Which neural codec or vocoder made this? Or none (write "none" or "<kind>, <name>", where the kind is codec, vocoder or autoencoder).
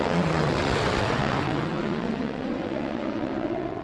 vocoder, WaveNeXt